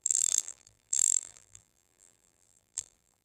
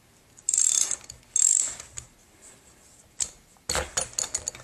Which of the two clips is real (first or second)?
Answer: second